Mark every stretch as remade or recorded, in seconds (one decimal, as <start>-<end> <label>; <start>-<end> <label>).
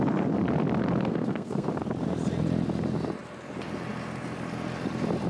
0.0-1.1 recorded; 1.1-1.7 remade; 1.7-5.3 recorded